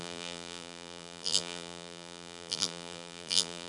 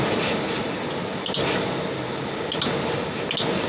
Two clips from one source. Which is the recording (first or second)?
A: second